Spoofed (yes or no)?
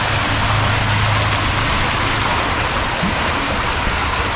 no